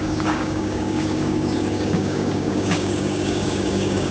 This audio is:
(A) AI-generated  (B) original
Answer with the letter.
A